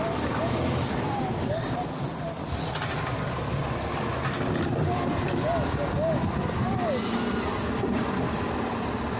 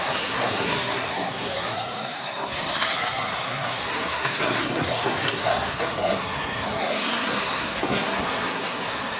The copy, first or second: second